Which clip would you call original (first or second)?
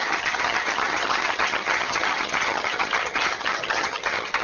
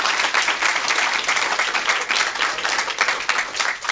second